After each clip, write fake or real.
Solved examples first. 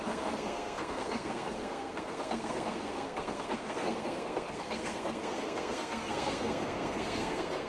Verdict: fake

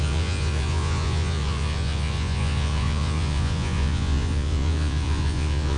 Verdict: fake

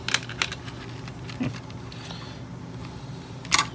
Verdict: real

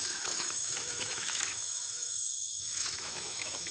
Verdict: fake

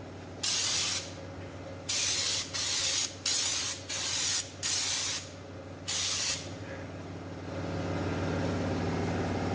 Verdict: real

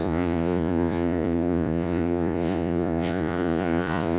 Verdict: fake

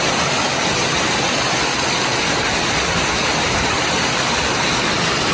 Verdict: real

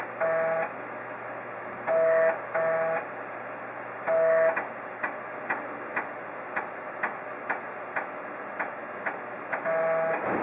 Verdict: real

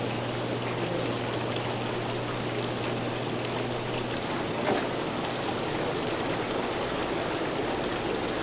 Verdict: real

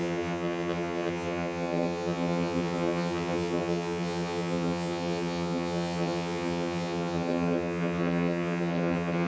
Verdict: fake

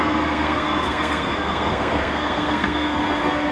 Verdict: fake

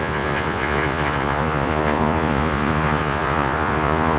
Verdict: fake